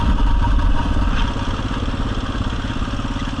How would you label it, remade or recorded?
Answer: recorded